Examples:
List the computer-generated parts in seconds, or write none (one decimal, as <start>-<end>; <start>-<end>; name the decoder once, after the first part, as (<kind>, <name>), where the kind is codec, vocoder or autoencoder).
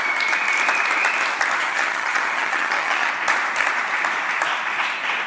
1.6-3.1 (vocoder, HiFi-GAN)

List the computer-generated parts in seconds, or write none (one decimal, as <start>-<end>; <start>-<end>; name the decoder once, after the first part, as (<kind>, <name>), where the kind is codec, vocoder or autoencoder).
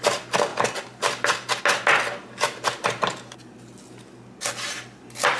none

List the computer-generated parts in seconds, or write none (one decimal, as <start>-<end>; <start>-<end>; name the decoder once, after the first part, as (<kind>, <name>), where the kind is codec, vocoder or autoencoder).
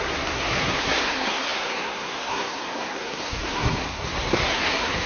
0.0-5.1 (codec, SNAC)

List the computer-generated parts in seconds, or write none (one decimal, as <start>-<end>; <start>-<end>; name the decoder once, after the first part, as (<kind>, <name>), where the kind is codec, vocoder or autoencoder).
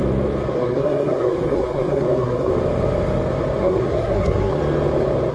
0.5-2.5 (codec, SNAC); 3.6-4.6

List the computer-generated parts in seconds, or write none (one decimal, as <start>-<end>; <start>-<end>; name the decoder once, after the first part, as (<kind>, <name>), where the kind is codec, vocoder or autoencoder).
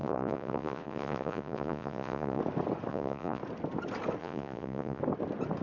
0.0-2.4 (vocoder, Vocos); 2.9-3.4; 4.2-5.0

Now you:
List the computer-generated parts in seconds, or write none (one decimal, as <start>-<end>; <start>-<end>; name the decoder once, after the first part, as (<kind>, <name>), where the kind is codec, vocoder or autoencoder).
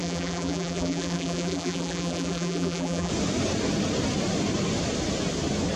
0.0-3.1 (vocoder, BigVGAN v2)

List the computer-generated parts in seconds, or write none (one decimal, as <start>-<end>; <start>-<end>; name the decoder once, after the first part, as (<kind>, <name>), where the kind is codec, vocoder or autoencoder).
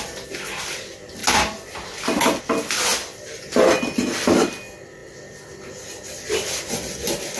none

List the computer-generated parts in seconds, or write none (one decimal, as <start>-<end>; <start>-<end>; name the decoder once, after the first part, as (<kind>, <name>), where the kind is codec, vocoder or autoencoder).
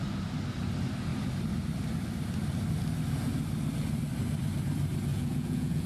5.1-5.9 (vocoder, Vocos)